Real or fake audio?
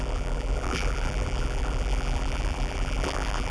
fake